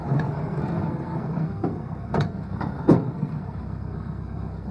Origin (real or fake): fake